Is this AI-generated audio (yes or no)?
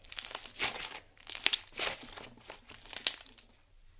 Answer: no